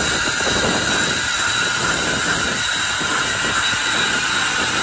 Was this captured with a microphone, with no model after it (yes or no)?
yes